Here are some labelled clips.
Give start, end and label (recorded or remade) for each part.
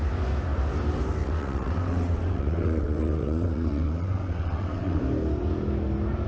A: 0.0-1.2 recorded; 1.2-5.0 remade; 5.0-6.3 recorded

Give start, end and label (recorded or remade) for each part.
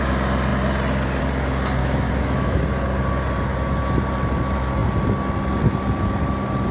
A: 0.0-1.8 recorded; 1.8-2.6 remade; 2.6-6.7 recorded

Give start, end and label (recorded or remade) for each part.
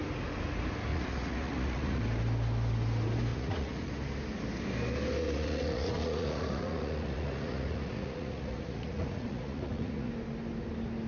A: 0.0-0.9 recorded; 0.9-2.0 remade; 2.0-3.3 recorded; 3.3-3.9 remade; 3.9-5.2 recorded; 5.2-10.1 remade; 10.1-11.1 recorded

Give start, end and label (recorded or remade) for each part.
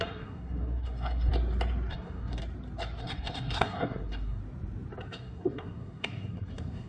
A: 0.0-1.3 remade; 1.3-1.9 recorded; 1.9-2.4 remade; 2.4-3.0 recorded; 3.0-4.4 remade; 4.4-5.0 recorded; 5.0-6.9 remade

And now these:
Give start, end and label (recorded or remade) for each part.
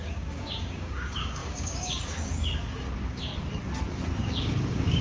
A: 0.0-3.3 remade; 3.3-4.2 recorded; 4.2-5.0 remade